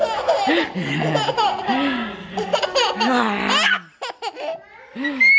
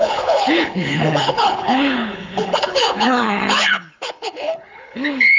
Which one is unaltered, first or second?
first